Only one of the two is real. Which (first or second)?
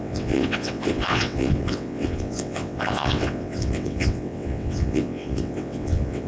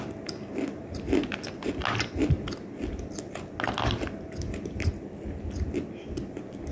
second